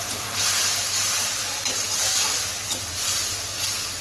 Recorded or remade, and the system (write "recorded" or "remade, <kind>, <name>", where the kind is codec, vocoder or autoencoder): recorded